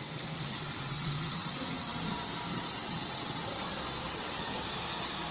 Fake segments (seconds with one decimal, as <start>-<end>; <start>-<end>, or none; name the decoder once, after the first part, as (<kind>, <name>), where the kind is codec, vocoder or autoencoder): 0.0-1.9 (vocoder, WaveNeXt); 2.8-3.4; 4.1-4.5